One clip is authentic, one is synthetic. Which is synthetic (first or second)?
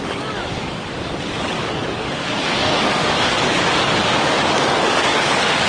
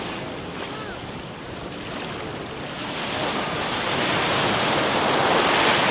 first